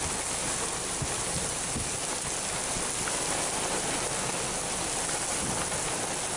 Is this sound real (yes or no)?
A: yes